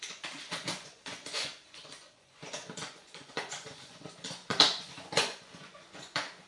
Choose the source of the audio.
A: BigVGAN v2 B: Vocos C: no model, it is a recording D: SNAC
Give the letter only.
B